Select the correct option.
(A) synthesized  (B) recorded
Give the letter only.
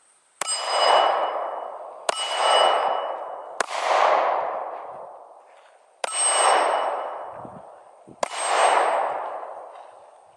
B